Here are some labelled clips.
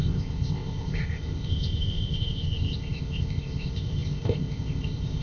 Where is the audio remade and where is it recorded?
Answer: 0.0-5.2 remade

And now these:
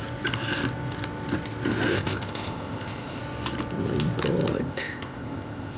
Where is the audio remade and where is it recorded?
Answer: 0.0-1.9 recorded; 1.9-3.2 remade; 3.2-4.5 recorded; 4.5-5.8 remade

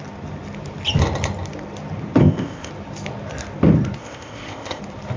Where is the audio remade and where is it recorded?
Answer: 0.0-2.2 recorded; 2.2-2.7 remade; 2.7-4.0 recorded; 4.0-4.8 remade; 4.8-5.2 recorded

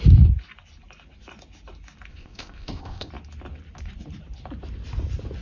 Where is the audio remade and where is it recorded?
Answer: 0.0-2.1 recorded; 2.1-3.1 remade; 3.1-5.4 recorded